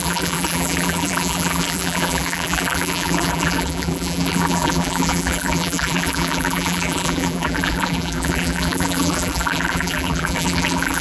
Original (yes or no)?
no